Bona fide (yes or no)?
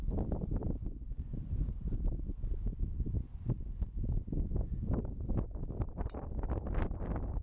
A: yes